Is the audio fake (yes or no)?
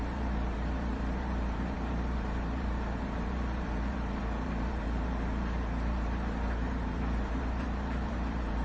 yes